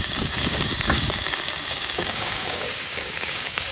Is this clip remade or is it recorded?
remade